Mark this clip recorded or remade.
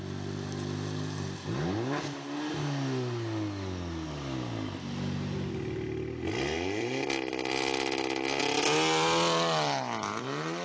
recorded